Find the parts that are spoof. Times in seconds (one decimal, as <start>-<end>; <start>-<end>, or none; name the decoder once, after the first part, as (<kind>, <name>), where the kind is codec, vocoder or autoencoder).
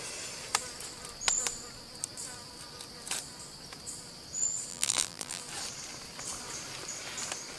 4.7-5.4 (vocoder, BigVGAN v2)